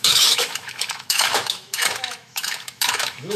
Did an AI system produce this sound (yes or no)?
yes